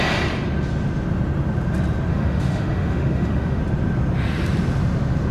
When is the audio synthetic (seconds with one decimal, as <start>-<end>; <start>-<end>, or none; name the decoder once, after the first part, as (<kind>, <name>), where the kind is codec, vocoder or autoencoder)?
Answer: 2.1-3.6 (autoencoder, DAC-VAE)